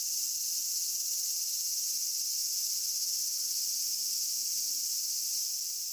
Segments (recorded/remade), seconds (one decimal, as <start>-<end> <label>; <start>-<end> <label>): 0.0-5.9 recorded